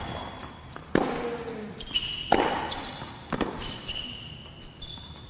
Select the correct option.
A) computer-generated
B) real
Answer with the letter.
B